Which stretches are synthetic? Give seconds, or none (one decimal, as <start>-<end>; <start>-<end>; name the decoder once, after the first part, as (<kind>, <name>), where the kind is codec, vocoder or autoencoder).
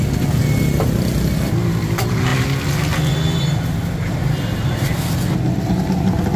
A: none